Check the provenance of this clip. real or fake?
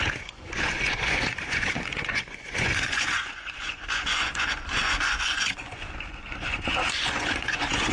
fake